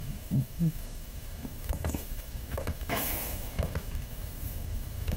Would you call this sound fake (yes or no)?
yes